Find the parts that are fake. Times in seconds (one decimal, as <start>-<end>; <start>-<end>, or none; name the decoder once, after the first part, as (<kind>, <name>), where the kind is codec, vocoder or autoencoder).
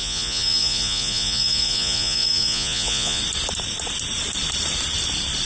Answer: 0.0-3.2 (vocoder, Vocos)